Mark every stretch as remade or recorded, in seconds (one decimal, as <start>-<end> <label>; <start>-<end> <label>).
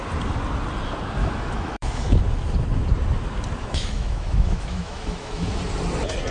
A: 0.0-1.2 recorded; 1.2-2.2 remade; 2.2-3.6 recorded; 3.6-5.5 remade; 5.5-6.3 recorded